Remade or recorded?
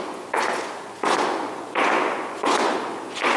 remade